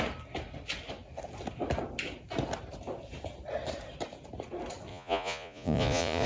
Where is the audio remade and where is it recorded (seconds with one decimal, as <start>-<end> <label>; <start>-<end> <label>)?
0.0-4.9 recorded; 4.9-6.3 remade